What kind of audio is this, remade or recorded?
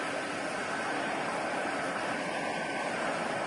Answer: recorded